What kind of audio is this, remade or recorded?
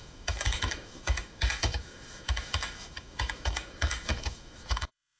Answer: remade